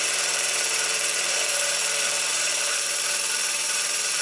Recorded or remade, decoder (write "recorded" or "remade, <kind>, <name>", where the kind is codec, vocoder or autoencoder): remade, vocoder, BigVGAN v2